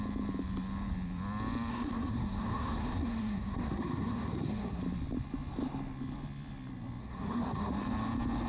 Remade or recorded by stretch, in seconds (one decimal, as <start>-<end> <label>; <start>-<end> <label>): 0.0-1.7 recorded; 1.7-4.8 remade; 4.8-7.0 recorded; 7.0-7.7 remade; 7.7-8.5 recorded